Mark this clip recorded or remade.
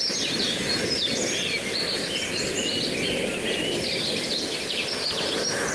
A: recorded